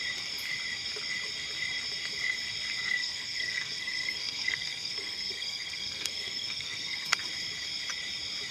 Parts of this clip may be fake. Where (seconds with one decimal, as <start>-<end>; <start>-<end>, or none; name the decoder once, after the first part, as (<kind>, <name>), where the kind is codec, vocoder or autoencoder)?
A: 3.0-7.2 (codec, SNAC)